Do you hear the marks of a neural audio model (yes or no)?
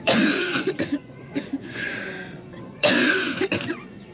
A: yes